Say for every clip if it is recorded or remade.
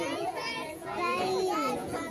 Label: remade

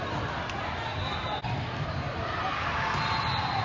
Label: recorded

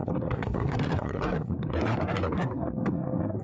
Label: remade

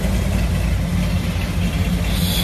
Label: recorded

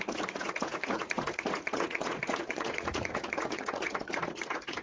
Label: remade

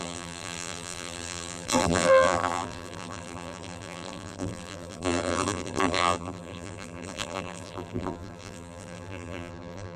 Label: remade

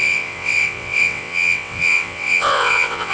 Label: remade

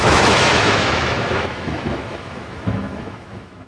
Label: remade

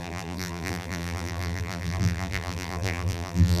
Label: remade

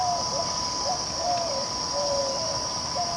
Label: recorded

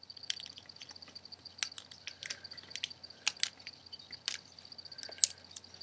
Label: recorded